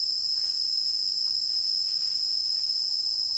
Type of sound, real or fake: real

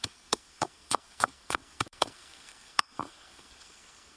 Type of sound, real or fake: fake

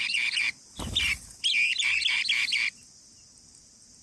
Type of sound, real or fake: real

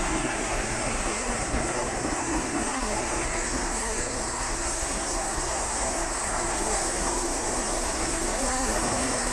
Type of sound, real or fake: fake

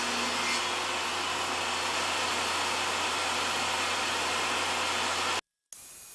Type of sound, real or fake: real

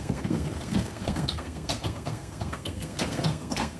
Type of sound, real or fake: fake